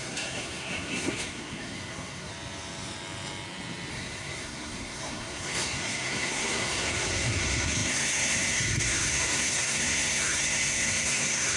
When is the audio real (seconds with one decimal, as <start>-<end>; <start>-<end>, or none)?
2.3-3.9